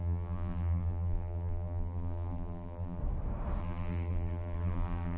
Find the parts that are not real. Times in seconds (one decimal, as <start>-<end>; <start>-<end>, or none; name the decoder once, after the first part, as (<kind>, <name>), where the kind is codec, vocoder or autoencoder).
0.0-3.0 (vocoder, BigVGAN v2); 3.6-5.2